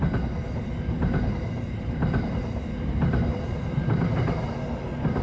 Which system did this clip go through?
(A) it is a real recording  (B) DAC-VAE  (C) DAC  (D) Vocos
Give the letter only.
A